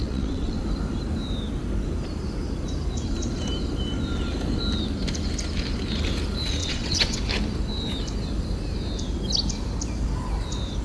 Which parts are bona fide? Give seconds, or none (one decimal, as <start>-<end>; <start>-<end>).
0.6-6.6; 7.2-10.8